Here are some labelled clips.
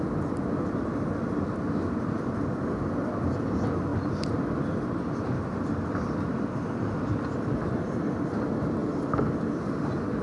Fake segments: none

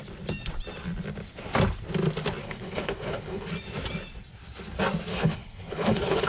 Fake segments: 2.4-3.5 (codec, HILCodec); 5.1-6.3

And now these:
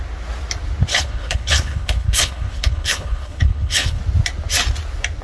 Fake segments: 0.9-4.0 (codec, HILCodec)